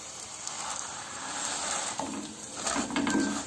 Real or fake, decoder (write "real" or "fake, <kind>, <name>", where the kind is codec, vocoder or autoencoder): fake, vocoder, BigVGAN v2